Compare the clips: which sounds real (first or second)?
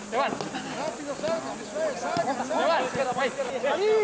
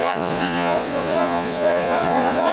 first